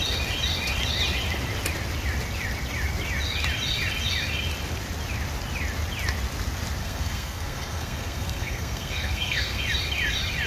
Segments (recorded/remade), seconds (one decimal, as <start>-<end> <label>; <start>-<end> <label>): 0.0-6.8 recorded; 6.8-9.6 remade; 9.6-10.5 recorded